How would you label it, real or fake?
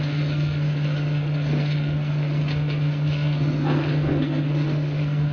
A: fake